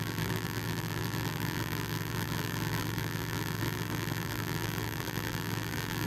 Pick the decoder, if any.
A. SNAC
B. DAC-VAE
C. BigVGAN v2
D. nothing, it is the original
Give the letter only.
C